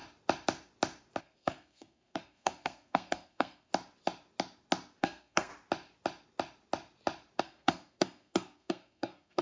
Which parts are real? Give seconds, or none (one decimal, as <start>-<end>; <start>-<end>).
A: 0.0-1.2; 3.7-5.0; 5.5-7.4